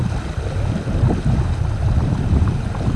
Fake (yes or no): no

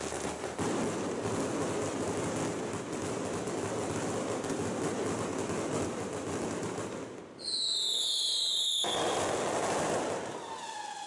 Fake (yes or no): no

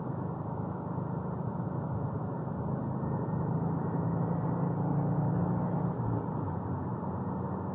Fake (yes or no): no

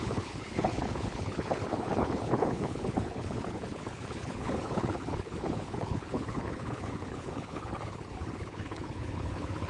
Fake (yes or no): yes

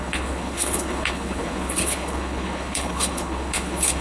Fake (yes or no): yes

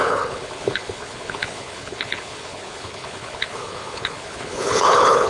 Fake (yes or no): yes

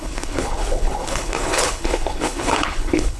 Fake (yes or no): yes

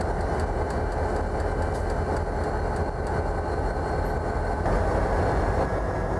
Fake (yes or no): no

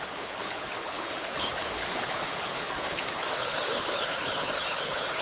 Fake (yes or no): yes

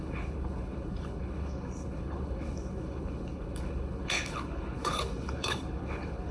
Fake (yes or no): yes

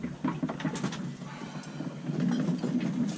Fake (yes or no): no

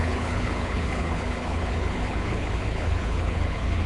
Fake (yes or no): yes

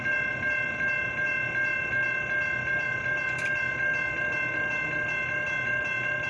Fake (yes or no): no